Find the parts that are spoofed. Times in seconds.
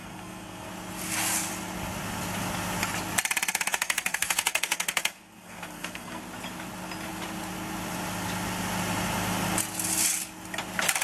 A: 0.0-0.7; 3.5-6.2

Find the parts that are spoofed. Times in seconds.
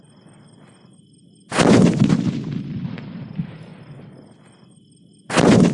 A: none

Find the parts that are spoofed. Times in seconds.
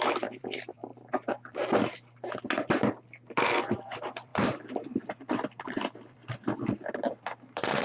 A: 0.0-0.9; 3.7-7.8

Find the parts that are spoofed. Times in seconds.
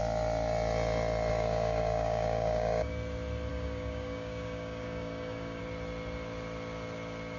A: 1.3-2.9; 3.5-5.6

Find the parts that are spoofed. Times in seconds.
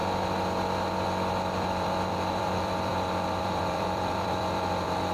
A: 1.5-5.1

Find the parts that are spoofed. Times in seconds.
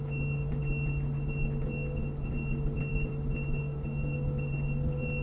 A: 2.9-3.6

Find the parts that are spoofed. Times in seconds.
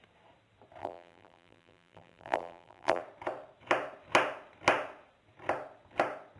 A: 0.8-3.0